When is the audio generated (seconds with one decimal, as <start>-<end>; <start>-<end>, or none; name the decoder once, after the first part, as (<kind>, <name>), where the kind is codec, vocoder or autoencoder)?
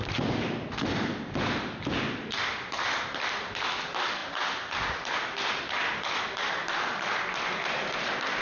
none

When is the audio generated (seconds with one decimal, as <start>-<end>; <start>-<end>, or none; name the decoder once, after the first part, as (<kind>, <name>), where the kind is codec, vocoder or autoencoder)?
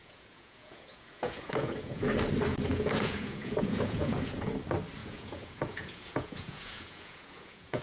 0.0-2.1 (vocoder, Vocos); 2.5-4.5; 5.0-7.8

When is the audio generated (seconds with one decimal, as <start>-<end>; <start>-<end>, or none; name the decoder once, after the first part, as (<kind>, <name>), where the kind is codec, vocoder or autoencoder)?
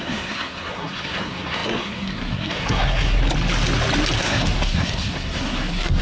0.0-3.2 (codec, SNAC); 4.2-6.0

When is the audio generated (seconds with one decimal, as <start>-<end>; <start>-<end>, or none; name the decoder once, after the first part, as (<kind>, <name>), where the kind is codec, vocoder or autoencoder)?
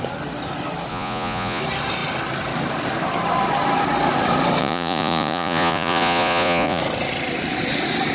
0.9-1.6 (vocoder, Vocos); 4.6-6.8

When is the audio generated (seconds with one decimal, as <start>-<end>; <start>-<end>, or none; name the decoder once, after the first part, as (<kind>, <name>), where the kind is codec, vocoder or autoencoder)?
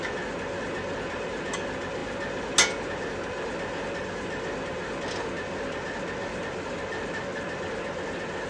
none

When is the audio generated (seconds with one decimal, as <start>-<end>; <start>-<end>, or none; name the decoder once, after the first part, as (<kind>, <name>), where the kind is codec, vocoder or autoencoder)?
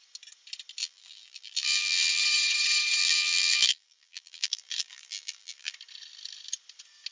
0.8-2.2 (vocoder, BigVGAN v2); 3.0-5.7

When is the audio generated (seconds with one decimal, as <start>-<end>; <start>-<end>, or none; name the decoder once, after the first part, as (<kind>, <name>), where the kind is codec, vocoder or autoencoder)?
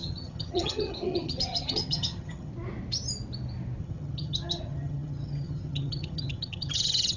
0.0-2.5 (vocoder, HiFi-GAN); 3.8-7.2